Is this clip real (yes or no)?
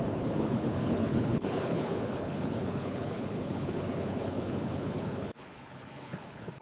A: no